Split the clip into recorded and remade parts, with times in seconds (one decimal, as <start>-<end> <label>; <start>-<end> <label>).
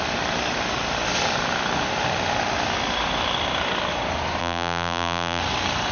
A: 0.0-4.4 recorded; 4.4-5.4 remade; 5.4-5.9 recorded